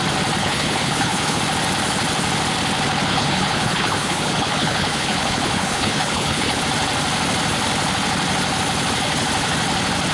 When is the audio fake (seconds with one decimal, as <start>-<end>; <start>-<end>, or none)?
0.4-1.4; 3.1-6.6